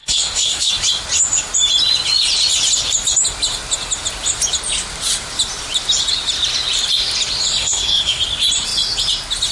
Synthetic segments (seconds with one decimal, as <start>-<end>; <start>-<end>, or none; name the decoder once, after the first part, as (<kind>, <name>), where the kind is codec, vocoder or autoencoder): 0.0-0.7 (codec, SNAC); 7.6-8.2